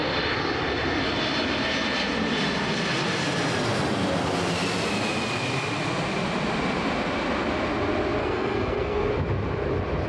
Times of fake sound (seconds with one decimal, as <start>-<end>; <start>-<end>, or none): 8.2-9.1